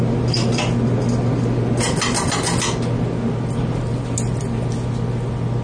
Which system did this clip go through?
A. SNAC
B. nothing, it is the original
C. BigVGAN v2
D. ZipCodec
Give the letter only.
B